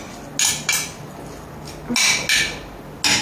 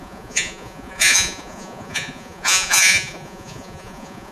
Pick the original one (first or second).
first